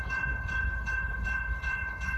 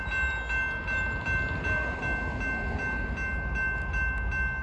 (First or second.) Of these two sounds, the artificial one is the first